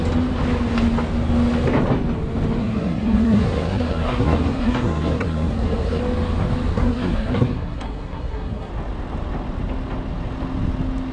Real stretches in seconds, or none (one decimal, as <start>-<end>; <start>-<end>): 0.0-2.6; 6.0-6.7; 8.7-11.1